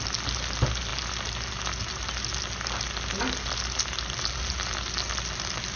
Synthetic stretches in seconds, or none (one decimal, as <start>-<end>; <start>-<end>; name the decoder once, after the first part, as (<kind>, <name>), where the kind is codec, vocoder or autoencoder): none